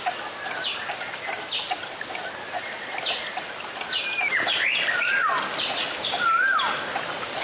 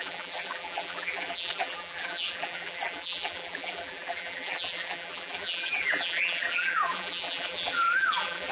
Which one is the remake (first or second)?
second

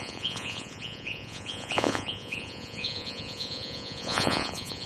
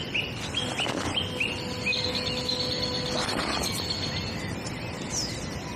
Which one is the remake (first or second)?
first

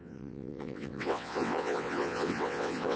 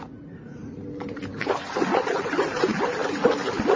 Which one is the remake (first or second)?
first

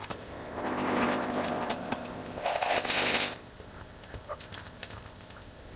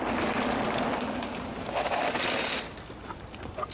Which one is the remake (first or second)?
first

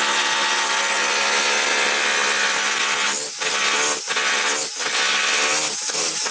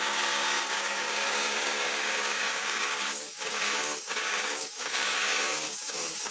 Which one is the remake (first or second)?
second